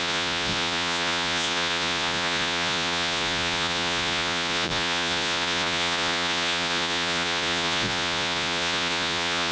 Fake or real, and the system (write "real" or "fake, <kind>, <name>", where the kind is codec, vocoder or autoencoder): fake, vocoder, Vocos